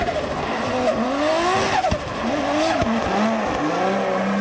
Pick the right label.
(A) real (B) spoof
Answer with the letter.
A